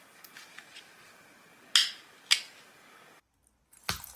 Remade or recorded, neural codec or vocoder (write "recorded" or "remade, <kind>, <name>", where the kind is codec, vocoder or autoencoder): recorded